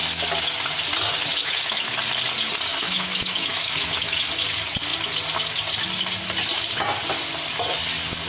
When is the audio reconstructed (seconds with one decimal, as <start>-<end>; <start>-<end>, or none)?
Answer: 1.4-2.0; 2.7-4.3